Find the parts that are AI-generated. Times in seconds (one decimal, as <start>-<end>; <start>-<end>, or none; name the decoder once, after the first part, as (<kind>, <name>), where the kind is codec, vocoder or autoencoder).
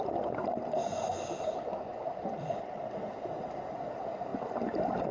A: none